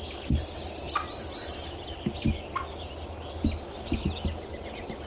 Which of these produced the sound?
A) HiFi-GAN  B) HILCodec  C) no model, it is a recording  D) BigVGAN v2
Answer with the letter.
C